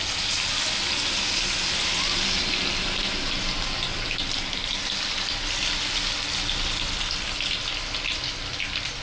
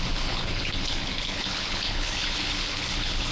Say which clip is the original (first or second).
first